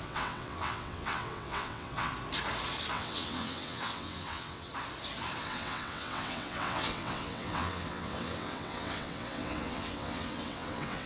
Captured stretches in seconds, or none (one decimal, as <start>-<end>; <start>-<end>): 2.1-2.9; 4.7-5.4